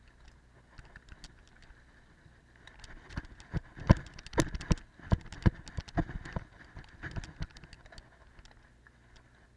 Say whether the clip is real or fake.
real